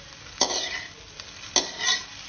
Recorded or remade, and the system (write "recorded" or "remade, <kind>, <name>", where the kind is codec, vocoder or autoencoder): recorded